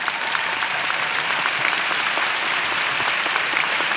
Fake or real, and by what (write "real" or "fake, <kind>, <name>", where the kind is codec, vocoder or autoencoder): fake, vocoder, BigVGAN v2